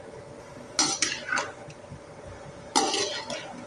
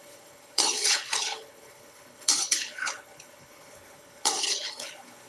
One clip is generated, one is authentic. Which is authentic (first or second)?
first